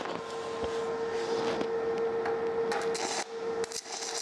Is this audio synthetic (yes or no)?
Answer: no